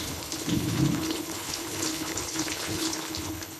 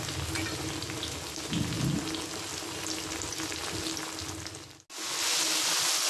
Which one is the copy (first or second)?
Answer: first